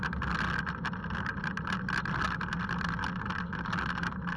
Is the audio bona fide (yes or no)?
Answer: yes